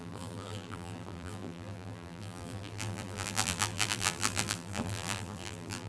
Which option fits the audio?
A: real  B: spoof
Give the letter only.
B